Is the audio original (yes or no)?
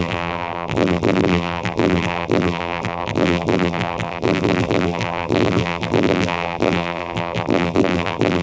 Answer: no